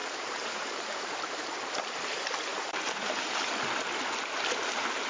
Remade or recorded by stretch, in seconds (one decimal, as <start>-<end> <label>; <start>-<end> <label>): 0.0-2.1 remade; 2.1-2.5 recorded; 2.5-3.5 remade; 3.5-5.1 recorded

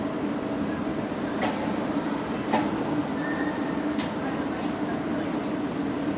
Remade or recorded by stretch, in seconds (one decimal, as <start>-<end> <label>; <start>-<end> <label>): 0.0-3.0 recorded; 3.0-4.6 remade; 4.6-5.1 recorded; 5.1-6.2 remade

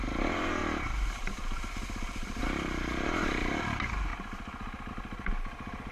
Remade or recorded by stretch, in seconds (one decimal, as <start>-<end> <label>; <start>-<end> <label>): 0.0-0.6 remade; 0.6-2.4 recorded; 2.4-4.1 remade; 4.1-4.9 recorded; 4.9-5.9 remade

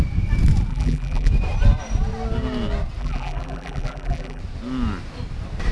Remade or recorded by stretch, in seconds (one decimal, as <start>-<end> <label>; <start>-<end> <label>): 0.0-0.7 recorded; 0.7-1.3 remade; 1.3-3.0 recorded; 3.0-4.4 remade; 4.4-5.7 recorded